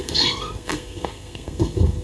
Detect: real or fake fake